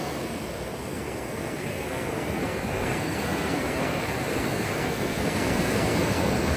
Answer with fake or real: fake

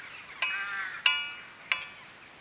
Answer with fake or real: real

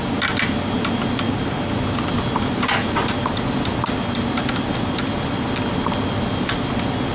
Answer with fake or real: real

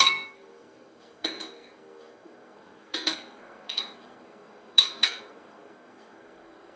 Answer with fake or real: fake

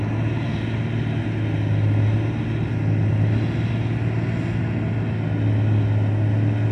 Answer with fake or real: real